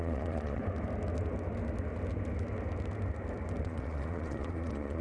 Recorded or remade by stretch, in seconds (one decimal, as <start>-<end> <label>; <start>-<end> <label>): 0.0-0.6 remade; 0.6-3.6 recorded; 3.6-5.0 remade